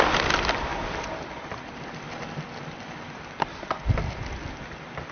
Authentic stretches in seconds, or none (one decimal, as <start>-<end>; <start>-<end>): 0.0-5.1